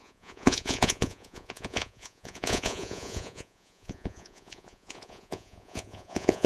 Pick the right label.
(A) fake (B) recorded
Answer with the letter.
A